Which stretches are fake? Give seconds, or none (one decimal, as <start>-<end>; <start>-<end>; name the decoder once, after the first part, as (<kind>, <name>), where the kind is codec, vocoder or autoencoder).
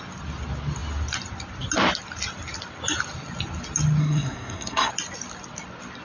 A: 4.0-4.9 (codec, SNAC)